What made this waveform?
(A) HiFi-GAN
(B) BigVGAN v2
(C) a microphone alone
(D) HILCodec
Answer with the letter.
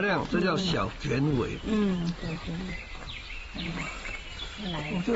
B